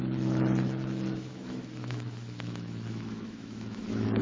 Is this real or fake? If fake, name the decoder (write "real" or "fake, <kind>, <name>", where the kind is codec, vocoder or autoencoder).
fake, autoencoder, DAC-VAE